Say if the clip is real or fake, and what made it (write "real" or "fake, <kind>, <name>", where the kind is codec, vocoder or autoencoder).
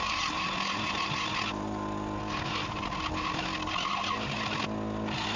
real